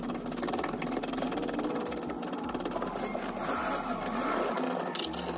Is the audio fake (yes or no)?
no